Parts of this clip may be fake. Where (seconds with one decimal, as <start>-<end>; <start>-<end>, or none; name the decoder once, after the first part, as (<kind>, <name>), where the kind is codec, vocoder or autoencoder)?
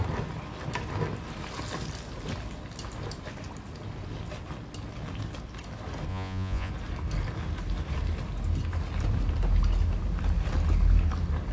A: 6.1-6.7 (vocoder, Vocos)